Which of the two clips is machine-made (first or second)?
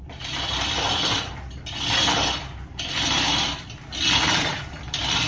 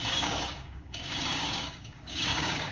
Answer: second